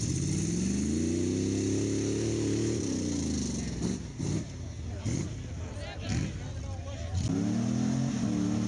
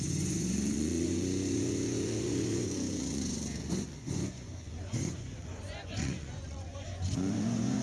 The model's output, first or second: second